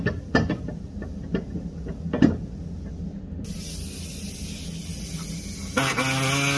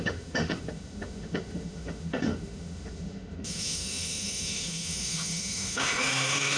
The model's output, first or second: second